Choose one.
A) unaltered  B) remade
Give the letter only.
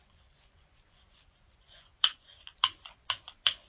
B